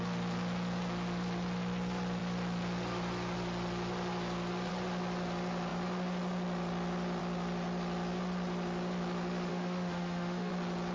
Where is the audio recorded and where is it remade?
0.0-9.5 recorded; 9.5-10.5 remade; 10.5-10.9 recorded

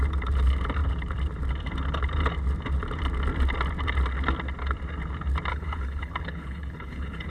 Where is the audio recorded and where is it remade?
0.0-5.5 recorded; 5.5-7.3 remade

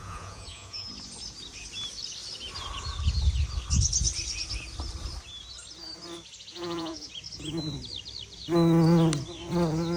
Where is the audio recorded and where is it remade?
0.0-0.9 remade; 0.9-6.5 recorded; 6.5-7.1 remade; 7.1-10.0 recorded

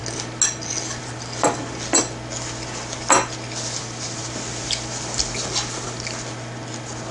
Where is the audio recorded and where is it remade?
0.0-7.1 recorded

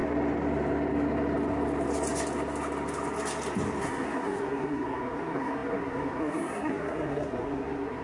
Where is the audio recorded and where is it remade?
0.0-3.8 recorded; 3.8-8.0 remade

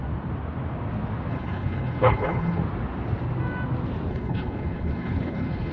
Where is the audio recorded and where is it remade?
0.0-1.3 recorded; 1.3-2.6 remade; 2.6-4.1 recorded; 4.1-5.7 remade